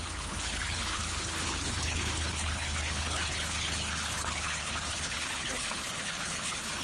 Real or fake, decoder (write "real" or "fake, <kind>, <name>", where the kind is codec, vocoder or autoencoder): fake, codec, HILCodec